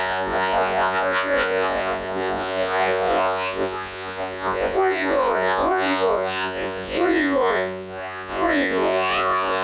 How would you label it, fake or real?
fake